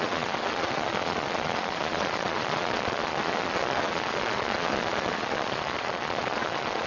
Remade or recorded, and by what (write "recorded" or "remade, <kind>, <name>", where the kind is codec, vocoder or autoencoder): remade, vocoder, Vocos